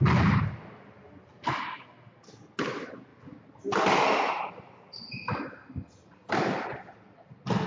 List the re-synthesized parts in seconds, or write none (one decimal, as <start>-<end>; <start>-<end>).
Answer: none